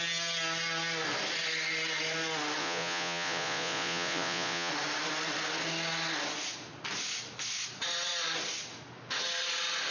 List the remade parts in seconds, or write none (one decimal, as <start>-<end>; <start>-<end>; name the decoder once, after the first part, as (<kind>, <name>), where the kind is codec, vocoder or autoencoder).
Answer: 2.6-4.7 (vocoder, Vocos)